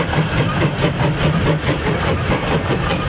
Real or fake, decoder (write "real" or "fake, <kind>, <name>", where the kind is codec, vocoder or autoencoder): fake, vocoder, BigVGAN v2